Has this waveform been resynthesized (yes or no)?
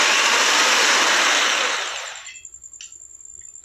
no